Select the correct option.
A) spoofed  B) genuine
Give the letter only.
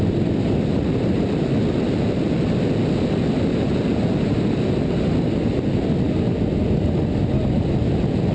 B